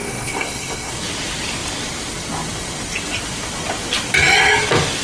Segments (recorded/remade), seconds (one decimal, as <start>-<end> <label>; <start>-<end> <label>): 0.0-0.9 remade; 0.9-5.0 recorded